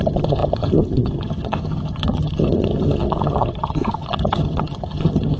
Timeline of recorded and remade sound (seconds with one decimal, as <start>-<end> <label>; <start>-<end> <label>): 0.0-5.4 remade